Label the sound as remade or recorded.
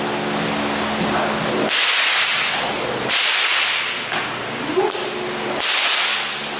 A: recorded